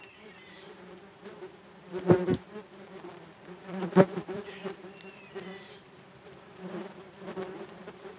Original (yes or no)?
no